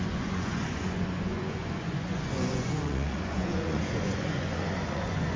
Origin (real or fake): fake